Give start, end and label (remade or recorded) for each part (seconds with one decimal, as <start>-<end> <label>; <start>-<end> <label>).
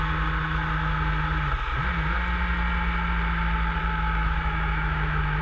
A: 0.0-3.8 recorded; 3.8-5.4 remade